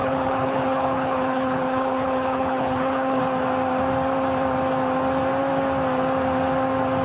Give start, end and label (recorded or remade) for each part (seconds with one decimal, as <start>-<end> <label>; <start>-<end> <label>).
0.0-3.2 remade; 3.2-7.0 recorded